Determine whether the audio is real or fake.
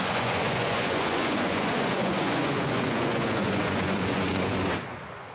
fake